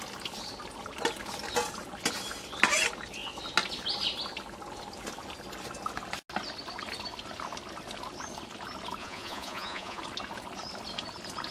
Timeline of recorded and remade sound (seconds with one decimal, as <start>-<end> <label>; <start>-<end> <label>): 0.0-9.0 recorded; 9.0-10.0 remade; 10.0-11.5 recorded